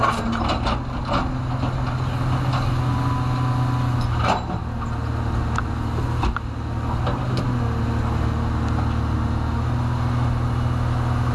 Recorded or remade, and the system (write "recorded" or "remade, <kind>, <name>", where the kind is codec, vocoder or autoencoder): recorded